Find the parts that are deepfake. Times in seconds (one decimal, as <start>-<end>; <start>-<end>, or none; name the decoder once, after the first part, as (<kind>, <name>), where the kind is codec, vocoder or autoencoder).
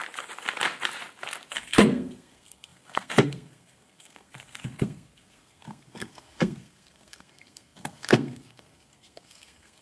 1.5-9.8 (codec, SNAC)